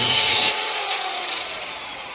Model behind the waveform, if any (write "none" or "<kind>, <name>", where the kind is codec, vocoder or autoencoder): vocoder, Vocos